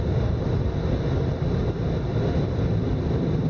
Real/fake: real